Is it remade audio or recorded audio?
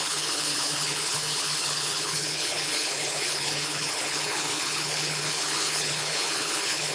remade